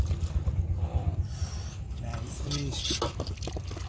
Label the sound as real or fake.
real